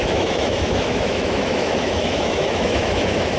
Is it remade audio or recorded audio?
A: remade